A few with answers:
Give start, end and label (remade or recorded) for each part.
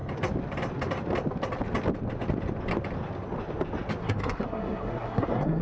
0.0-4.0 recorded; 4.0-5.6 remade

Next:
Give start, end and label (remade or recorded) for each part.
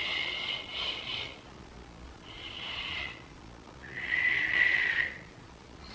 0.0-5.9 remade